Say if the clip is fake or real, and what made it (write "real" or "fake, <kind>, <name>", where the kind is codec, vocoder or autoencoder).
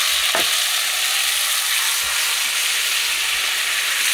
real